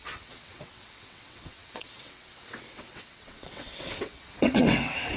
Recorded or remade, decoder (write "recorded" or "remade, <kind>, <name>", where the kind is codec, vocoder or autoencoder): remade, vocoder, WaveNeXt